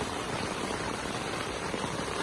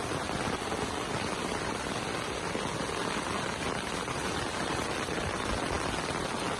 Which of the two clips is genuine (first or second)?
second